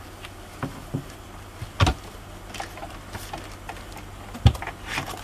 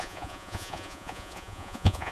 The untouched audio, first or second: first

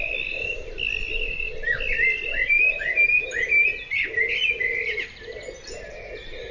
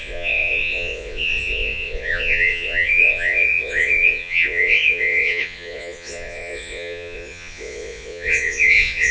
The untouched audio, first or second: first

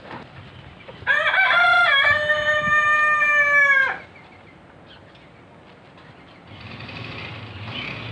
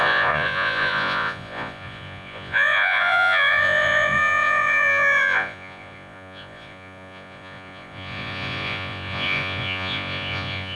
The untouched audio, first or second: first